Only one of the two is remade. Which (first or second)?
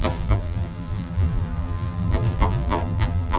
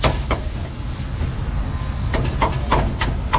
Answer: first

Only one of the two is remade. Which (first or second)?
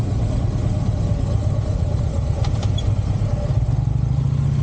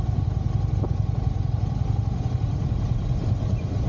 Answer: second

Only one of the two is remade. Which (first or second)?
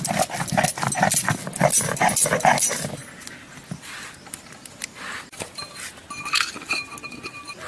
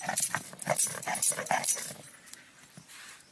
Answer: second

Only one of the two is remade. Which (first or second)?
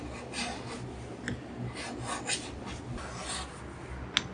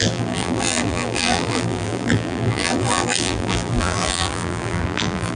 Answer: second